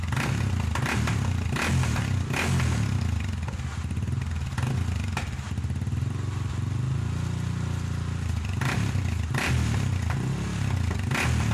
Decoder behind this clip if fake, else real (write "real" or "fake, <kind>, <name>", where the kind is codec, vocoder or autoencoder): real